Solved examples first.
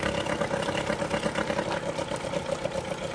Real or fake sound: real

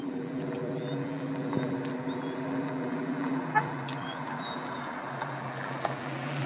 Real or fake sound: fake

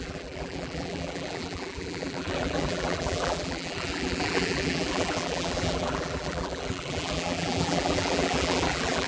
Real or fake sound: fake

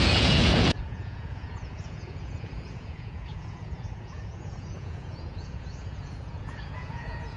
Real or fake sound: fake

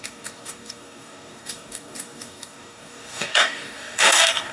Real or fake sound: fake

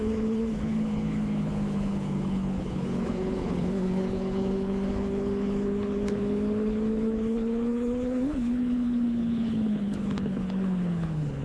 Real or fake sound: fake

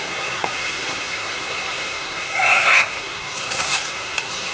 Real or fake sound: fake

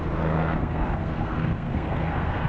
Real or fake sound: fake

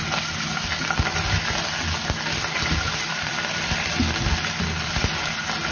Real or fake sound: real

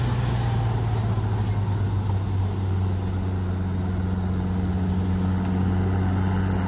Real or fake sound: real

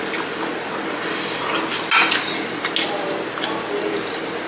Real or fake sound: real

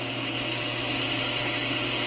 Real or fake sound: real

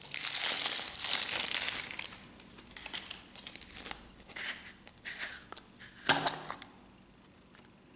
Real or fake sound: real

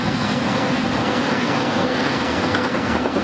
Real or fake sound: fake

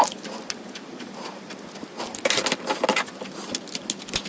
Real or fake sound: real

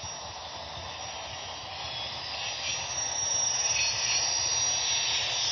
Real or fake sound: real